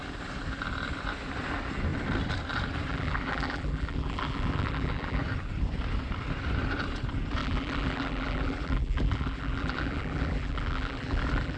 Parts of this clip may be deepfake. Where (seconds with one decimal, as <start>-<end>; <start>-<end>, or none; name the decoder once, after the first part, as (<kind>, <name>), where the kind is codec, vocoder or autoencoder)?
2.9-5.2 (vocoder, BigVGAN v2); 7.4-11.6